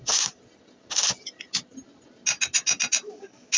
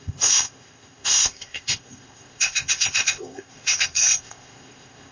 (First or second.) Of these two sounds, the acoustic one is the first